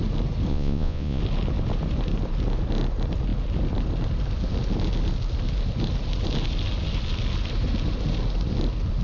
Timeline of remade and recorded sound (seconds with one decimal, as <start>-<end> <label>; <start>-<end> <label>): 0.0-0.5 recorded; 0.5-1.2 remade; 1.2-9.0 recorded